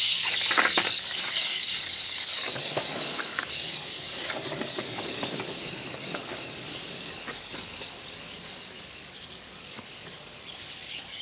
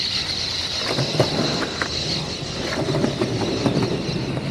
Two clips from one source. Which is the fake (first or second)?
first